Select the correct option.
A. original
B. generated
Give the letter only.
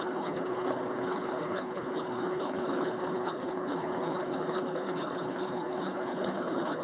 B